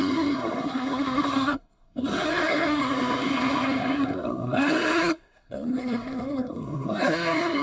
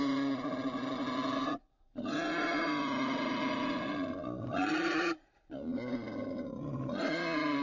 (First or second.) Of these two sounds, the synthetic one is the first